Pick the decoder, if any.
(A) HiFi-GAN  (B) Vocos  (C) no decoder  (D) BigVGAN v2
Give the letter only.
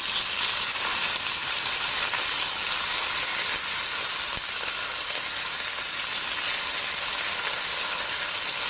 C